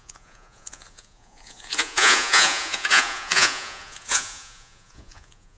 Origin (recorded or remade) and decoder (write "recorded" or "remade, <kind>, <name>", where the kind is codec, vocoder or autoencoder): remade, vocoder, Vocos